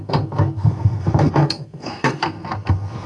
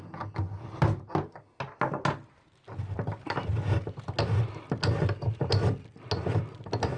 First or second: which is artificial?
first